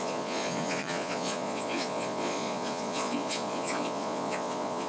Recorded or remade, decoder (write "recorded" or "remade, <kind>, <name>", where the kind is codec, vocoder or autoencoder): remade, vocoder, Vocos